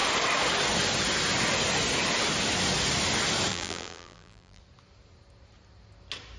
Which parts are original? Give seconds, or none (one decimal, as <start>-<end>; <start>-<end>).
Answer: 0.0-3.5; 4.6-6.4